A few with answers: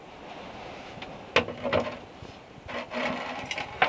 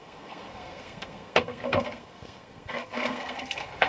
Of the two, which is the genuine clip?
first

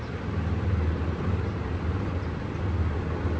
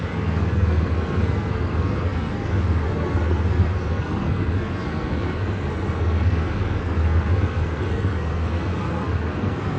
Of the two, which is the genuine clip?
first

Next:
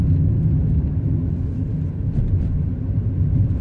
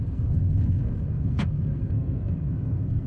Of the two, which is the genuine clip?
first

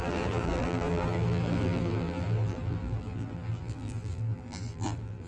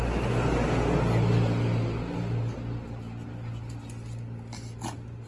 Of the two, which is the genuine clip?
second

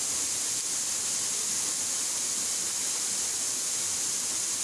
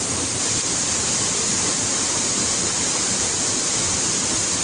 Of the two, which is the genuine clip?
first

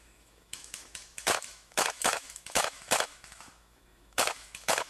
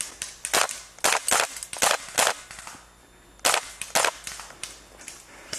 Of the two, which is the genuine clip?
second